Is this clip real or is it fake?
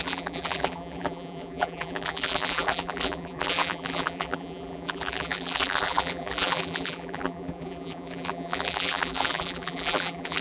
fake